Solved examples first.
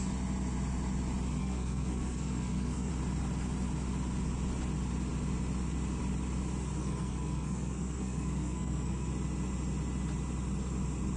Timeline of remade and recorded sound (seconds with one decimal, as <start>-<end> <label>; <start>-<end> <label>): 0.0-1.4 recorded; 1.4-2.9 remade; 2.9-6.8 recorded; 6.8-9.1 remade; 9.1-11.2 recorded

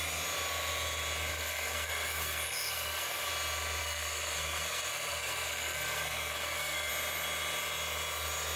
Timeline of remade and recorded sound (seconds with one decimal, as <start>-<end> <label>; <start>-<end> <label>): 0.0-1.3 recorded; 1.3-3.3 remade; 3.3-3.8 recorded; 3.8-6.9 remade; 6.9-8.6 recorded

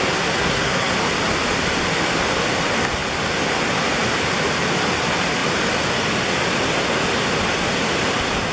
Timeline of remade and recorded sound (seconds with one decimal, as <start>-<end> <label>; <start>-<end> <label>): 0.0-0.4 recorded; 0.4-0.9 remade; 0.9-8.5 recorded